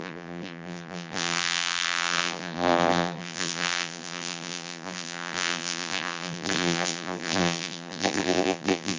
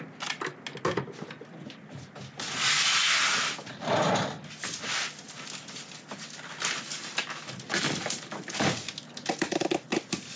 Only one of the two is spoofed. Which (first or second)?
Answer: first